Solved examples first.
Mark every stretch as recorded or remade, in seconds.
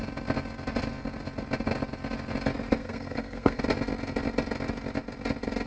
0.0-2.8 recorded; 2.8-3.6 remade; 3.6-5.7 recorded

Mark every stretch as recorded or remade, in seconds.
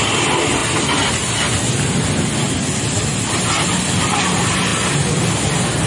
0.0-5.9 recorded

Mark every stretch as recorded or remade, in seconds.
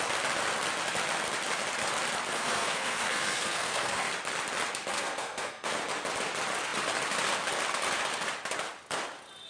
0.0-2.3 recorded; 2.3-4.1 remade; 4.1-4.9 recorded; 4.9-5.7 remade; 5.7-9.5 recorded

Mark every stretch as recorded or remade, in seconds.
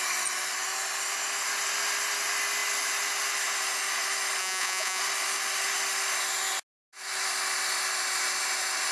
0.0-4.4 recorded; 4.4-5.0 remade; 5.0-8.9 recorded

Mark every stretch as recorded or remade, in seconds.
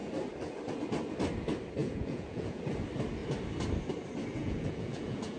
0.0-1.8 recorded; 1.8-2.6 remade; 2.6-4.4 recorded; 4.4-5.4 remade